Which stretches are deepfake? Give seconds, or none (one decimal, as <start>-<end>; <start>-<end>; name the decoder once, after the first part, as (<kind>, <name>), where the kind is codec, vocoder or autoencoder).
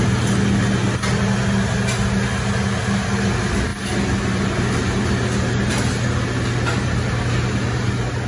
none